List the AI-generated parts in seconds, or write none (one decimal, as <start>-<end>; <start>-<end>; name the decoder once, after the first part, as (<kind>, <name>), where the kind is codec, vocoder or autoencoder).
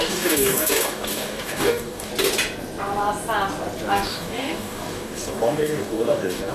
0.0-2.1 (codec, DAC); 3.9-6.5